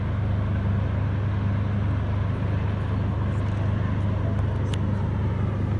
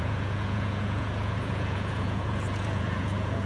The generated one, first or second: second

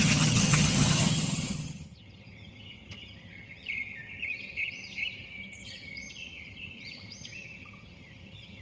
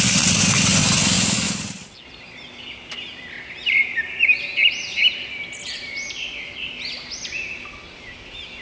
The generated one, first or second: first